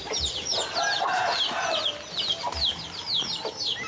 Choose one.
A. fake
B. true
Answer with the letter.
B